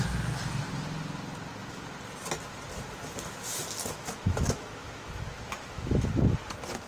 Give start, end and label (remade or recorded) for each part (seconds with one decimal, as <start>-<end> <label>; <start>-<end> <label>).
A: 0.0-3.8 recorded; 3.8-6.1 remade; 6.1-6.9 recorded